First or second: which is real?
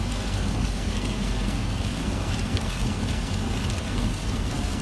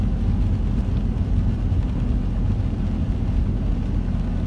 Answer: second